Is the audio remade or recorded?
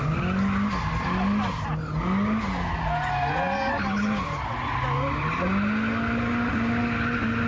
recorded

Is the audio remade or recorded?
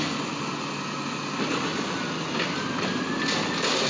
recorded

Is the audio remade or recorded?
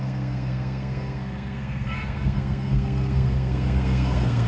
remade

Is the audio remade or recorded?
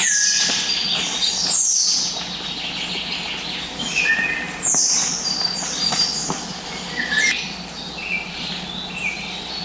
recorded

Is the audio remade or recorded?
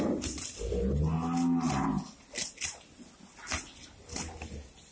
recorded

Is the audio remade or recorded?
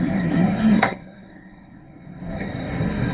remade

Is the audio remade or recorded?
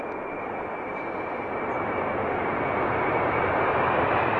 recorded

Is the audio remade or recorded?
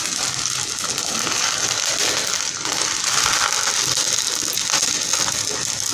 recorded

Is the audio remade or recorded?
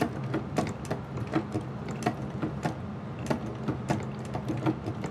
recorded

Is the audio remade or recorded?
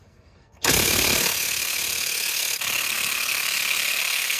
remade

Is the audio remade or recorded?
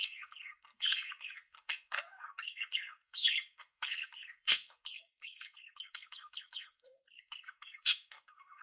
remade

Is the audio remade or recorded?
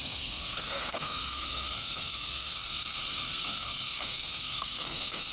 remade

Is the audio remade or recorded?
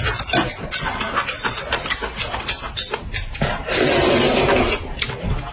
recorded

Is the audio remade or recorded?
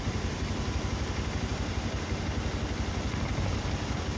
recorded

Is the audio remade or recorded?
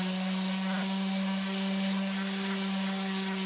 recorded